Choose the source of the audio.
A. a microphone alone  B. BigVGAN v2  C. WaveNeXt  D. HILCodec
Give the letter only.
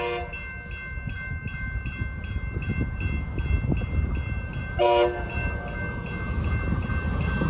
A